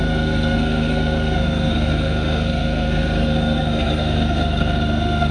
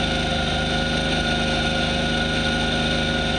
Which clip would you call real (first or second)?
second